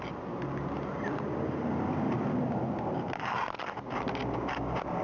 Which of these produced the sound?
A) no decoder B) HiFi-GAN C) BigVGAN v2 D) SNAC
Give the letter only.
A